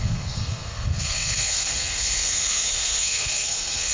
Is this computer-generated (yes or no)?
yes